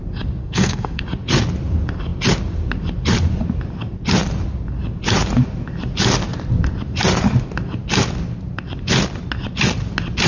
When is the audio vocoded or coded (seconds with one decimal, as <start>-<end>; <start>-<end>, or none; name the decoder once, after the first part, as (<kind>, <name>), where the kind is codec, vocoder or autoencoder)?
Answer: 0.4-1.0 (codec, SNAC)